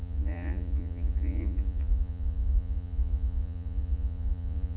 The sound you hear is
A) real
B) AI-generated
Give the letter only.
B